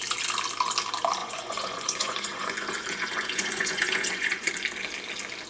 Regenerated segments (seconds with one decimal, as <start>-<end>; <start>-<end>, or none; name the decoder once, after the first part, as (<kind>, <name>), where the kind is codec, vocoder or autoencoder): 1.2-4.5 (vocoder, Vocos)